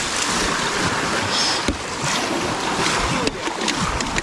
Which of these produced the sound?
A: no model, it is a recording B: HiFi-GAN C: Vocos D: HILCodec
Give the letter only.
A